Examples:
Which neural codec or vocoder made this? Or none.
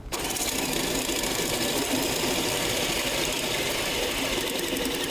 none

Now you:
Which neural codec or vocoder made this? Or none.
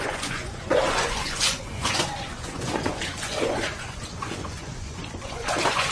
vocoder, Vocos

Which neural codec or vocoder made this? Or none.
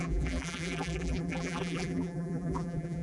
vocoder, BigVGAN v2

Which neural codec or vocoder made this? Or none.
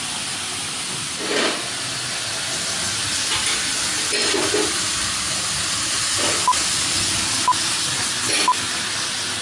none